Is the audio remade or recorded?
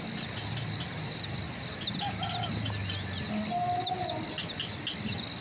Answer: recorded